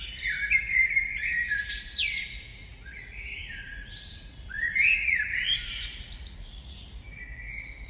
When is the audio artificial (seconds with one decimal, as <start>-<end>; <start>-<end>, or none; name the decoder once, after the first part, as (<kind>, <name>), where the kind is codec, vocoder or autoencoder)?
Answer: 1.0-2.1 (vocoder, Vocos); 2.5-7.2